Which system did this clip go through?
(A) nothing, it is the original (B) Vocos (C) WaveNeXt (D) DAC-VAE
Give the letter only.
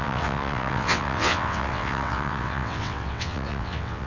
C